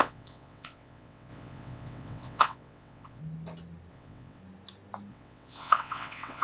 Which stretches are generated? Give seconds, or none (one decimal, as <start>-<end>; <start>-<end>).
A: 0.0-3.2; 3.9-4.4; 5.1-6.4